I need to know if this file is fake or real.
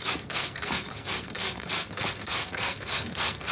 fake